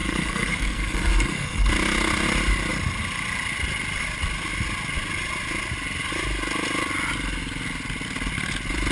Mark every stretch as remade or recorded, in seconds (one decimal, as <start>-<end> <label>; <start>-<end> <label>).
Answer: 0.0-1.7 remade; 1.7-8.9 recorded